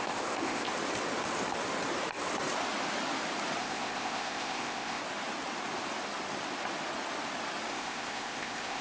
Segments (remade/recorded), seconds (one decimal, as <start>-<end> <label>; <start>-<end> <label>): 0.0-0.7 remade; 0.7-3.6 recorded; 3.6-5.0 remade; 5.0-7.7 recorded; 7.7-8.8 remade